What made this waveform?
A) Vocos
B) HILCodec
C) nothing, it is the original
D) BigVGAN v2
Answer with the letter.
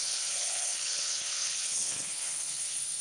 B